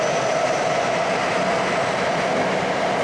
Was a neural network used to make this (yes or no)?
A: no